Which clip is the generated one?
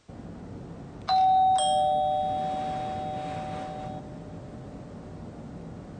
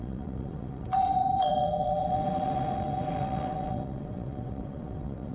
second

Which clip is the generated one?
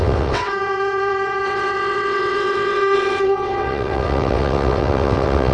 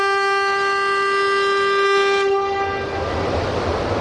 first